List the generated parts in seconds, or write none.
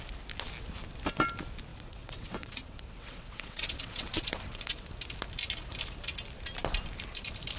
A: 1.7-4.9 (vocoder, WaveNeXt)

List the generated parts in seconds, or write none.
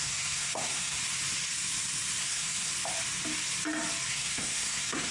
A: 0.0-1.0 (codec, SNAC); 2.2-2.7; 4.1-5.1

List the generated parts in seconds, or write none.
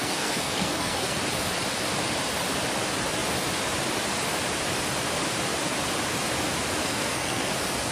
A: 0.0-1.2 (codec, SNAC); 6.8-7.5